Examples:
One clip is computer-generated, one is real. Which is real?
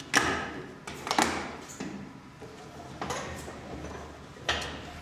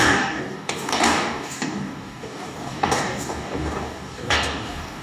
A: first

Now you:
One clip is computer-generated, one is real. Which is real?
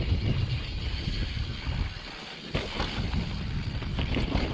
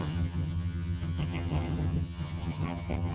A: first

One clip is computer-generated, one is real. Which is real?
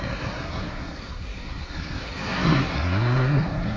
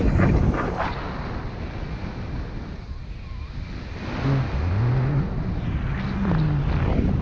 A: second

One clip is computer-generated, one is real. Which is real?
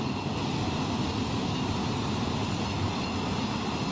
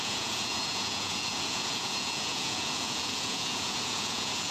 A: first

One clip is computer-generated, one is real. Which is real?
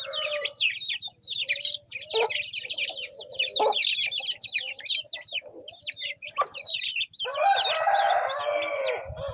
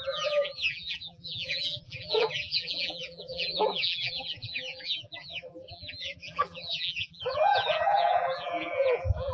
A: first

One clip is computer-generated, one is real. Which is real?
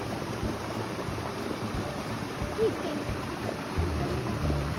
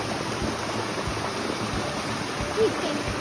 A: second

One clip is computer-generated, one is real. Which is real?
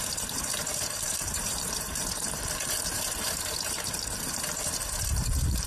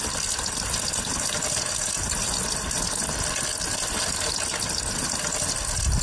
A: second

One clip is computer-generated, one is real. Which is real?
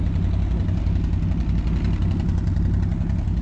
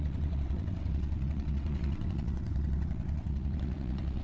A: first